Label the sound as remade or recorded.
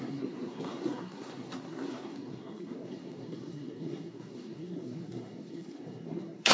remade